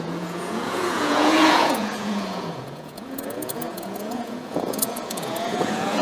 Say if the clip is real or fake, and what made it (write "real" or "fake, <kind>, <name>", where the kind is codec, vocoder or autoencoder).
fake, vocoder, Vocos